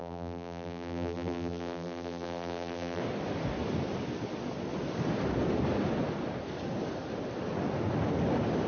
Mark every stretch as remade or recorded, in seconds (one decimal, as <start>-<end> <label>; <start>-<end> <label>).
0.0-3.0 remade; 3.0-8.7 recorded